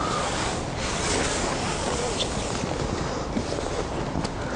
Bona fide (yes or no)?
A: yes